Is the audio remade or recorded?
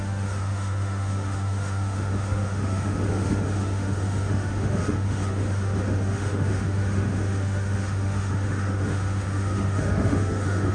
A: remade